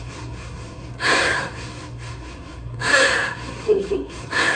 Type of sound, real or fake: fake